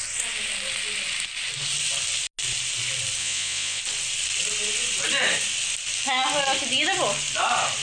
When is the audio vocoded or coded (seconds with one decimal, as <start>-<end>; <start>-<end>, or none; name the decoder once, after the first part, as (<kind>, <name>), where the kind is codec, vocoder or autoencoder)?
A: 3.2-3.8 (vocoder, Vocos)